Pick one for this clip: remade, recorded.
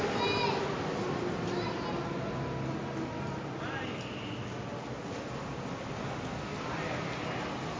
recorded